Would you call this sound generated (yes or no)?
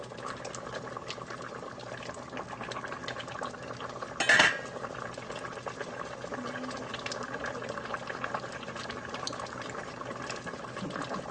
no